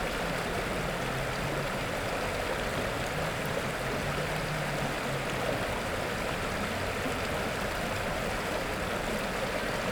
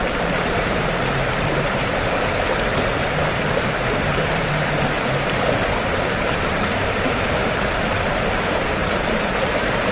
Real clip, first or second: first